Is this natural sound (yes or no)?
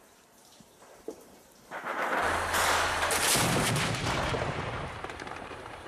no